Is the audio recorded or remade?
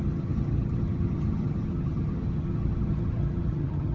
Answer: remade